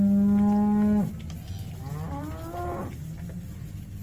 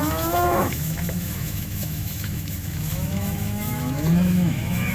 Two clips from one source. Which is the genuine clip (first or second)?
first